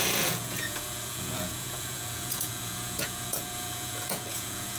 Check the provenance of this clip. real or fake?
fake